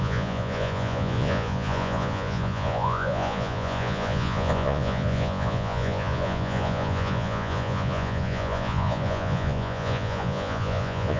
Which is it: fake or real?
fake